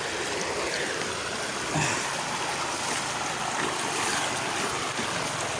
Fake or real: real